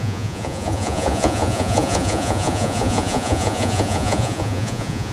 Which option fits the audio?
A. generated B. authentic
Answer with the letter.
A